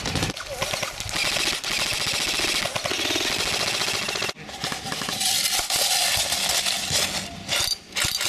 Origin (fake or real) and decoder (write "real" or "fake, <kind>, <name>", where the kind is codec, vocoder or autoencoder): real